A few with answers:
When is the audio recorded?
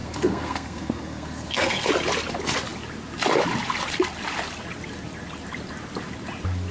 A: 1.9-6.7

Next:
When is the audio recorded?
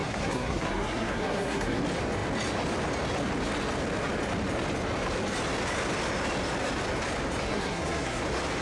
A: 1.8-7.5; 8.2-8.6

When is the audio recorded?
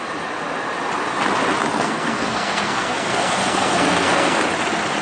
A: 0.0-1.7; 4.4-5.0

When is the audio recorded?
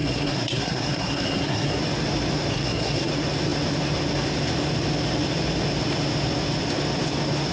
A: 1.8-2.5; 3.1-7.5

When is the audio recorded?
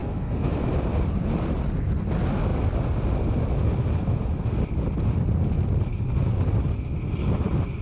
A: 0.5-7.8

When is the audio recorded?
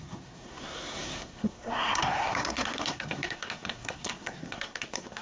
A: none